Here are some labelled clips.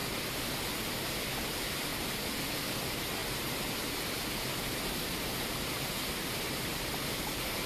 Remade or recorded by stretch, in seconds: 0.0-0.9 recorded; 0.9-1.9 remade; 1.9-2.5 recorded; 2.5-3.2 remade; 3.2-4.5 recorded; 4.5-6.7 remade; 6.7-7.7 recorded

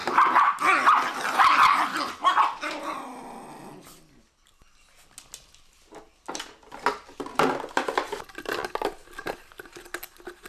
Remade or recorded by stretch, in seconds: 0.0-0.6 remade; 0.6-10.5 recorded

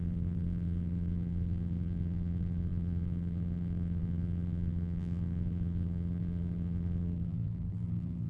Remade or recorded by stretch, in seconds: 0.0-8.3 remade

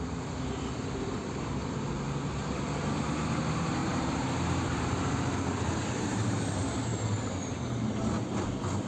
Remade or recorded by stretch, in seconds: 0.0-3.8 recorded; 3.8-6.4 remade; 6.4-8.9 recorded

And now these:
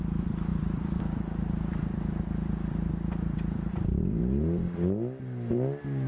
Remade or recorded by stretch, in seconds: 0.0-4.2 remade; 4.2-6.1 recorded

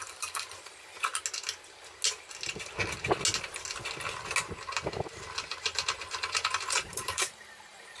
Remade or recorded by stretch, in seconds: 0.0-1.1 remade; 1.1-5.6 recorded; 5.6-8.0 remade